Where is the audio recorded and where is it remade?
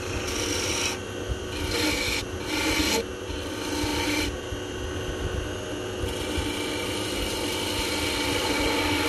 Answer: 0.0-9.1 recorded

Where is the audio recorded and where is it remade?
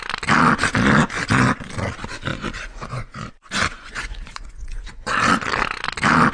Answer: 0.0-2.3 recorded; 2.3-3.3 remade; 3.3-3.7 recorded; 3.7-5.1 remade; 5.1-6.3 recorded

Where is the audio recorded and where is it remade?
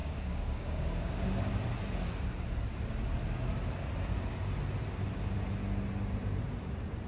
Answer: 0.0-1.5 remade; 1.5-7.1 recorded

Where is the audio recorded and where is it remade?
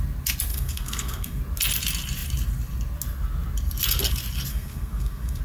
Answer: 0.0-0.5 recorded; 0.5-1.4 remade; 1.4-4.5 recorded; 4.5-5.4 remade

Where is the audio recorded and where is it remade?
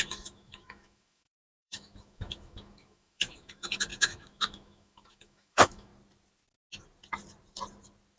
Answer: 0.0-5.9 remade; 5.9-8.2 recorded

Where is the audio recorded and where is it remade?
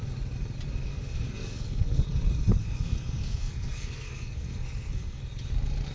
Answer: 0.0-0.9 recorded; 0.9-2.0 remade; 2.0-2.6 recorded; 2.6-5.2 remade; 5.2-5.9 recorded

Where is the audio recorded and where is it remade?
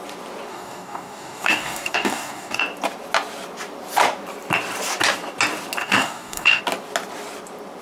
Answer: 0.0-0.5 recorded; 0.5-2.6 remade; 2.6-5.8 recorded; 5.8-6.6 remade; 6.6-7.8 recorded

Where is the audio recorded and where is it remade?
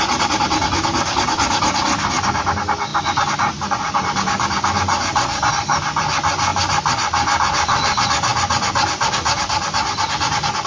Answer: 0.0-10.7 recorded